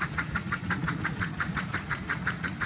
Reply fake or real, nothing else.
fake